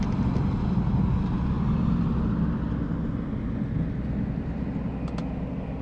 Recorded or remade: recorded